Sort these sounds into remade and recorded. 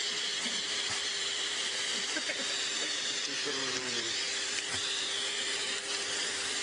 remade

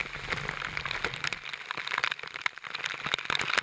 recorded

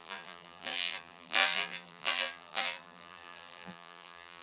remade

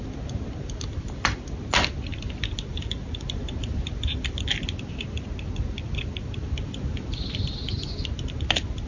recorded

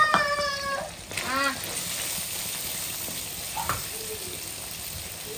recorded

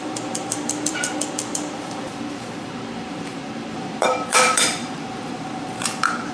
remade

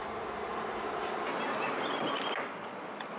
remade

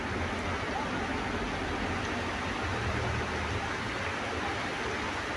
recorded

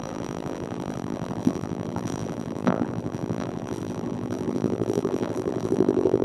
remade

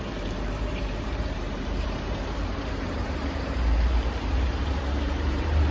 remade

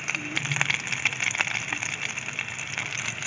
recorded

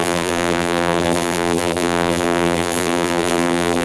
remade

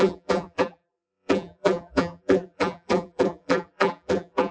remade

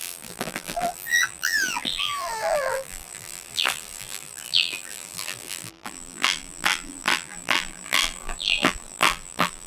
remade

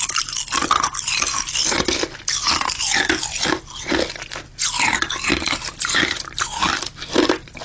recorded